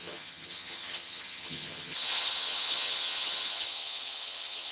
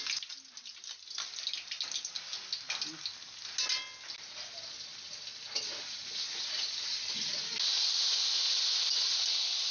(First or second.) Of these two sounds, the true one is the second